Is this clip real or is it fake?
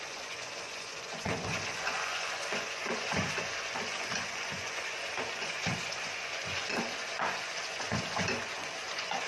fake